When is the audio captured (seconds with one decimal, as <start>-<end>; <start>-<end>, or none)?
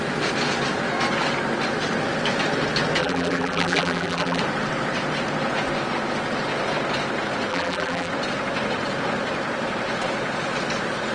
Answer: 0.0-3.0; 4.4-7.5; 8.1-11.1